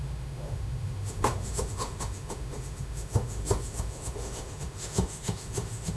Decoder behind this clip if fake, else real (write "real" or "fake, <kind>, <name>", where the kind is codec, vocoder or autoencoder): fake, autoencoder, DAC-VAE